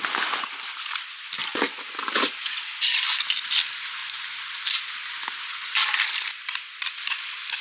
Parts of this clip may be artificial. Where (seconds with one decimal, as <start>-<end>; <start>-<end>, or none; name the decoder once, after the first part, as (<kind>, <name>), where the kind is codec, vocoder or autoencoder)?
0.0-1.4 (vocoder, BigVGAN v2); 2.0-4.0; 5.5-7.6